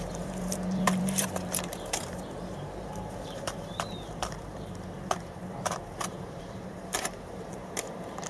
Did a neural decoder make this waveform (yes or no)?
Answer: yes